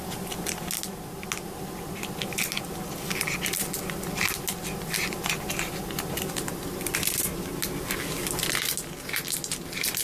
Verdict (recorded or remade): recorded